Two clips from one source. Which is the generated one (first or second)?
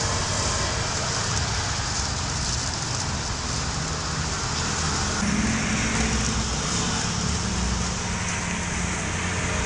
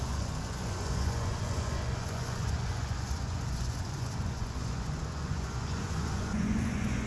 second